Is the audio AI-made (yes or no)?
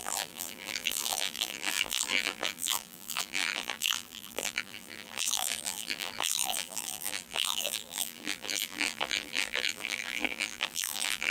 yes